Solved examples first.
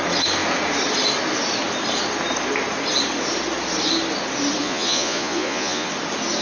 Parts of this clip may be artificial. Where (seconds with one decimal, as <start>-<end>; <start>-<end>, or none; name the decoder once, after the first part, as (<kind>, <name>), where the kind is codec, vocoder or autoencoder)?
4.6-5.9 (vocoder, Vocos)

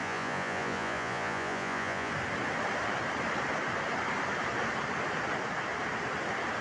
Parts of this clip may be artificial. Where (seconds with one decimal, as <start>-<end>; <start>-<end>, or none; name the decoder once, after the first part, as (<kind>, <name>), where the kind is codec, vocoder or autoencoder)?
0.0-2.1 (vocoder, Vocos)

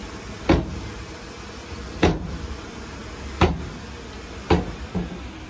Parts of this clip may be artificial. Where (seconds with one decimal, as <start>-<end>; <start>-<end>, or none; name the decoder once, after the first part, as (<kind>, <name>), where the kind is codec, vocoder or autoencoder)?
none

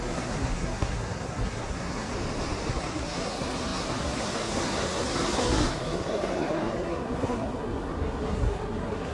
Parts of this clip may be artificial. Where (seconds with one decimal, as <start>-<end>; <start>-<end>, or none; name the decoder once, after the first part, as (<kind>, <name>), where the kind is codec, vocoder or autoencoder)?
0.0-2.1 (codec, SNAC); 2.7-9.1